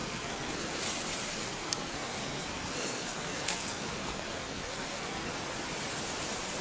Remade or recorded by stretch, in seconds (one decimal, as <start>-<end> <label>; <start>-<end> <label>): 0.0-0.8 remade; 0.8-1.3 recorded; 1.3-5.3 remade; 5.3-6.6 recorded